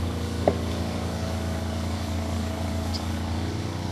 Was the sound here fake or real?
fake